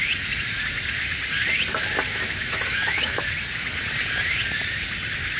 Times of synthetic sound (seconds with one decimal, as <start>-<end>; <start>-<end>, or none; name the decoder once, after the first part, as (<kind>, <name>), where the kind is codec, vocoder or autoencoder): 2.1-3.2 (autoencoder, DAC-VAE)